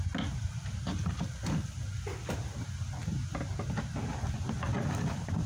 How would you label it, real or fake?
real